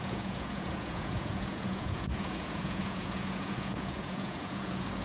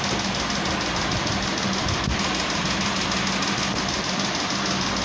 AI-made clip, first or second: first